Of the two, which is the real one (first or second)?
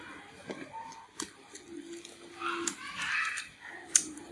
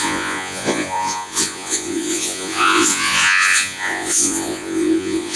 first